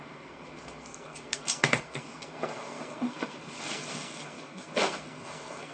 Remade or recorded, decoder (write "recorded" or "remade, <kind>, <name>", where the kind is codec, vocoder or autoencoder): remade, codec, SNAC